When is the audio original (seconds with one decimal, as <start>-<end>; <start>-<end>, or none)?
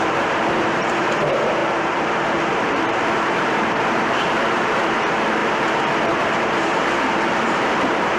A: none